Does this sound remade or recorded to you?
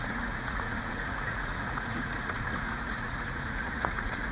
remade